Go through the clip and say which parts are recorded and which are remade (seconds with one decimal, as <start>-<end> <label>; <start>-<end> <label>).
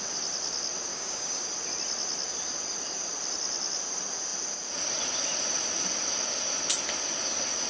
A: 0.0-0.9 recorded; 0.9-1.5 remade; 1.5-7.7 recorded